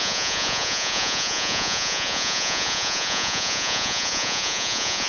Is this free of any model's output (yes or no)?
no